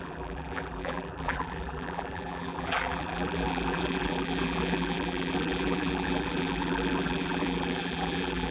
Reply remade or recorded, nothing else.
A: remade